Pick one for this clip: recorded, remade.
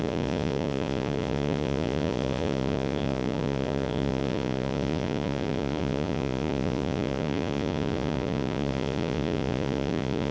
remade